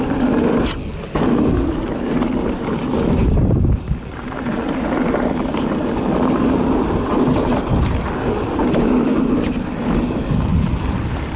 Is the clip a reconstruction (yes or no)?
no